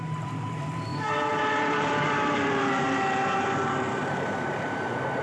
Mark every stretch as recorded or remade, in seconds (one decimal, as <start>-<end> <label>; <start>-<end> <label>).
0.0-5.2 remade